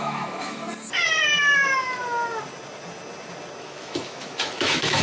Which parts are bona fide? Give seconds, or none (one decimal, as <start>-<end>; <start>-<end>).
0.6-3.6